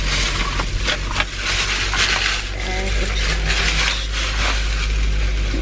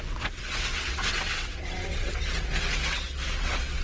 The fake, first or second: second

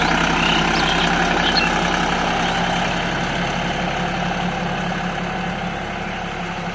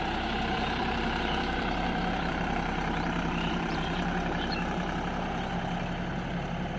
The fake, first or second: second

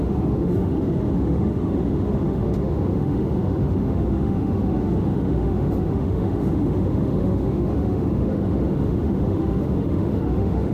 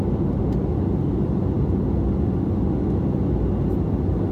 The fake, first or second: first